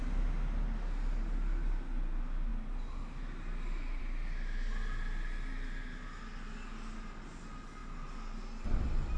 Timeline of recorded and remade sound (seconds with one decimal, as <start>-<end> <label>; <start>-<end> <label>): 0.0-9.2 recorded